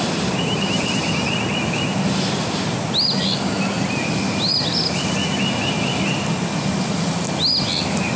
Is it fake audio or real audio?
real